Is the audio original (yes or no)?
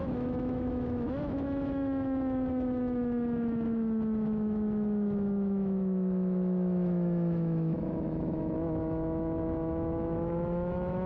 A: no